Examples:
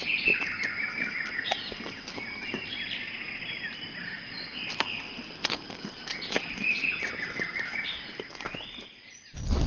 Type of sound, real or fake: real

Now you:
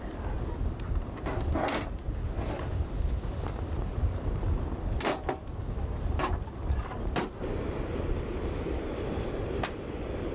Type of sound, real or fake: real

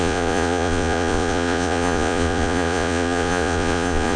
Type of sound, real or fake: fake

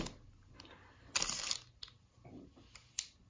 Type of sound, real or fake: real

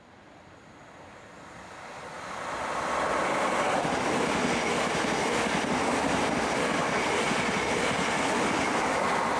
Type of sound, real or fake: real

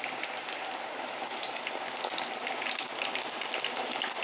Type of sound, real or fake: real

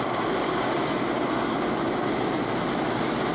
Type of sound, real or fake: real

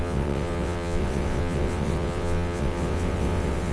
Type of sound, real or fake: fake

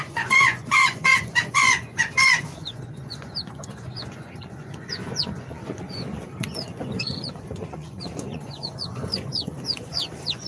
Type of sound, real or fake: fake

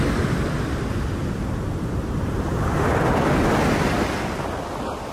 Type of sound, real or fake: real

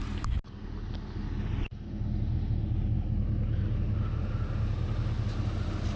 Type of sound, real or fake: real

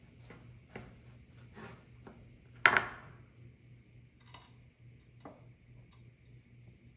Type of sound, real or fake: real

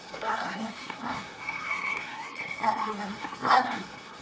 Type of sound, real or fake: fake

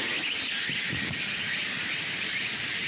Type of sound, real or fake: real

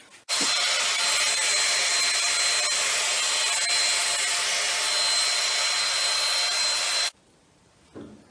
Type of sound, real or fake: real